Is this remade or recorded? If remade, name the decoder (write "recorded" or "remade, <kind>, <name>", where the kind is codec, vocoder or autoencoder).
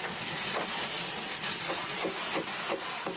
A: recorded